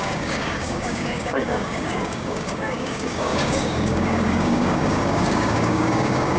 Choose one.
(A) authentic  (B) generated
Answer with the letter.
B